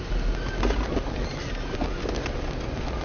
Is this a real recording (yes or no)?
yes